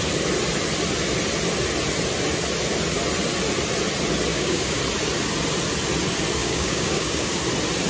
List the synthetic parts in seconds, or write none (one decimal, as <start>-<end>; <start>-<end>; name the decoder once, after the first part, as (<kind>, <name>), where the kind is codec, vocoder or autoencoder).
4.3-4.8 (codec, DAC); 6.4-7.4